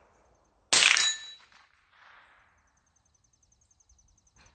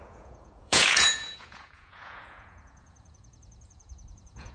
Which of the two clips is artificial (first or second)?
second